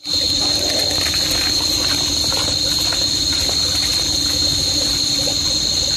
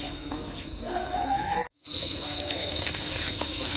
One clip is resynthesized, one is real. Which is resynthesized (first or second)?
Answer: second